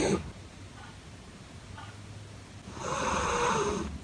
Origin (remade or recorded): recorded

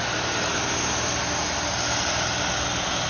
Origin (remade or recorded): recorded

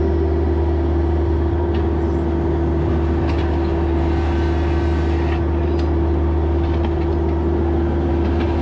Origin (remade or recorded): recorded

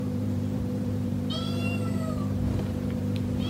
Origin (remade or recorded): remade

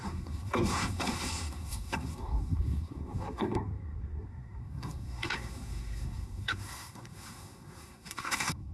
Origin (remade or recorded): remade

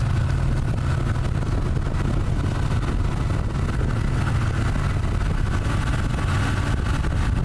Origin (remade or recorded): recorded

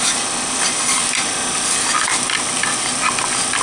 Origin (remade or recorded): recorded